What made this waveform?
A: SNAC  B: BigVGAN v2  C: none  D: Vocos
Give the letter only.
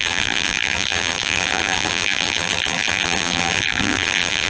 B